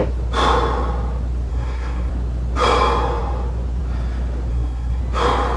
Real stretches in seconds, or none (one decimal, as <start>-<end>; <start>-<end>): 0.0-1.5; 2.1-4.5; 5.0-5.6